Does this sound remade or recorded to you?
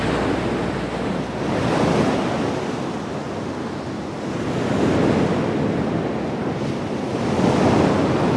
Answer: recorded